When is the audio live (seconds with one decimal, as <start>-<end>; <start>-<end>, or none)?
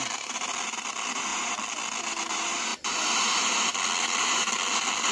0.0-5.1